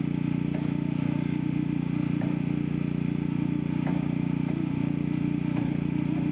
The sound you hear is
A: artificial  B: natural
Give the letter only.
B